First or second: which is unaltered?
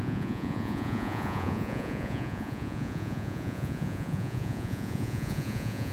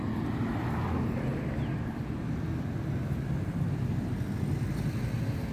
second